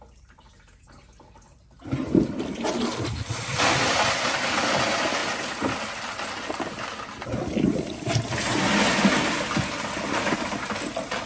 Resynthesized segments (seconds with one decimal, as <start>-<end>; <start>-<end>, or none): 5.2-8.1